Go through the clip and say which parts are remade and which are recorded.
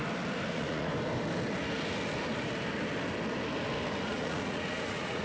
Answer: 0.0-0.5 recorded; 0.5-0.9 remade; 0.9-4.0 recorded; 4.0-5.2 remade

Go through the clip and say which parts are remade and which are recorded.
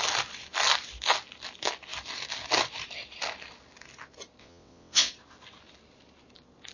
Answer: 0.0-4.4 recorded; 4.4-5.1 remade; 5.1-6.7 recorded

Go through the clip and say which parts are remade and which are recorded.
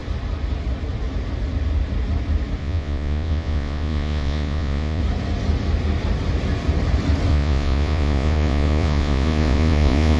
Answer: 0.0-2.6 recorded; 2.6-5.0 remade; 5.0-7.3 recorded; 7.3-10.2 remade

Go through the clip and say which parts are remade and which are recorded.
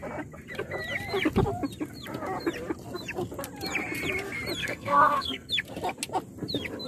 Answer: 0.0-4.6 recorded; 4.6-5.5 remade; 5.5-6.9 recorded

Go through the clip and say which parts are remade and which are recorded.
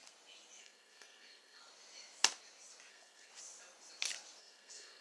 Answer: 0.0-0.6 recorded; 0.6-1.6 remade; 1.6-2.9 recorded; 2.9-3.3 remade; 3.3-4.4 recorded; 4.4-5.0 remade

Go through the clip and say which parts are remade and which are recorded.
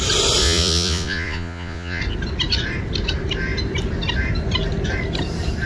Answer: 0.0-0.4 recorded; 0.4-2.0 remade; 2.0-5.7 recorded